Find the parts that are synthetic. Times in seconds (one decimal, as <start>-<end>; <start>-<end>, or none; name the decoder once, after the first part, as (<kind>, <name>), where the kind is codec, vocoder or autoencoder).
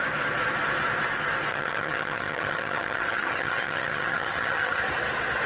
1.5-4.8 (vocoder, HiFi-GAN)